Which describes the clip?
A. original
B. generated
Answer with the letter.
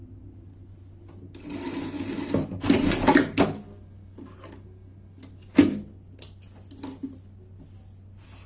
A